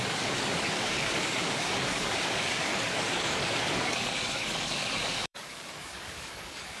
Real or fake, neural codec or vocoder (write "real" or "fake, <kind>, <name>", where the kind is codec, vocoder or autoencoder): fake, codec, DAC